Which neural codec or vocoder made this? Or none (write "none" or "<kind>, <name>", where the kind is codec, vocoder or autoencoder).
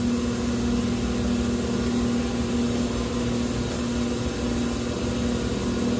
none